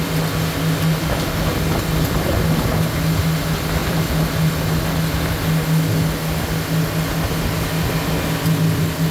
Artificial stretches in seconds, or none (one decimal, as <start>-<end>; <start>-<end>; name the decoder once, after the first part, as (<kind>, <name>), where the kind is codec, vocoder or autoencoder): 3.8-4.5 (vocoder, BigVGAN v2)